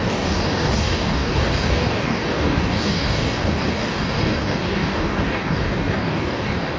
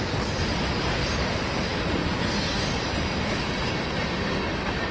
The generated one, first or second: first